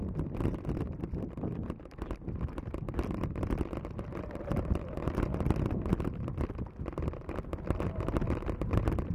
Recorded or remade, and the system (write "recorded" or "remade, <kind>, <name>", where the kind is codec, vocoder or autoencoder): recorded